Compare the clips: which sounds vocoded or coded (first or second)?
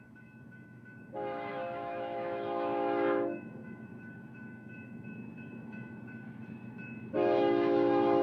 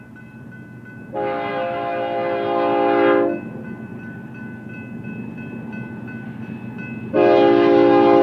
first